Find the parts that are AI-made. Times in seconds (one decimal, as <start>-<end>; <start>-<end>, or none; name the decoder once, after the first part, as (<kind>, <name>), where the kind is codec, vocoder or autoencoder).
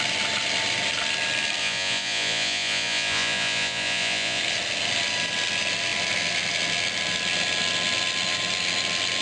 1.6-4.4 (vocoder, Vocos)